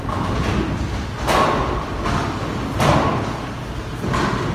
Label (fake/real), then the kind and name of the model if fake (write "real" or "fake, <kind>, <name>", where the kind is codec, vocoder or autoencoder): real